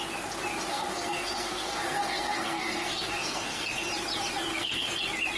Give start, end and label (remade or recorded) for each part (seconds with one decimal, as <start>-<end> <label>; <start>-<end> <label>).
0.0-0.7 recorded; 0.7-3.9 remade; 3.9-4.5 recorded; 4.5-5.0 remade; 5.0-5.4 recorded